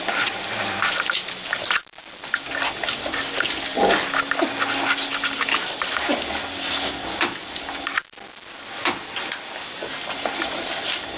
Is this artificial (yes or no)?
no